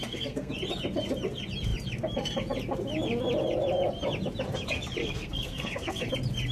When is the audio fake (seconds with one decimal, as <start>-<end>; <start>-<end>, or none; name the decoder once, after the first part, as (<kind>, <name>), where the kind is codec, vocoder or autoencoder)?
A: 0.0-0.5 (codec, SNAC); 5.0-6.1